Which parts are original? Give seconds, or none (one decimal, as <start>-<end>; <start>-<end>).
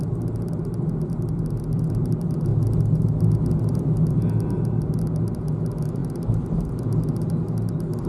0.0-8.1